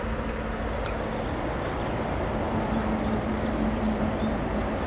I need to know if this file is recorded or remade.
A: recorded